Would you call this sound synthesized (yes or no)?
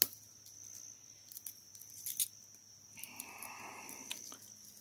no